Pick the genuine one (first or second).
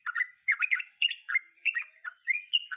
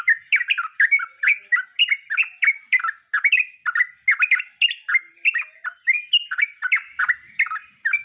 second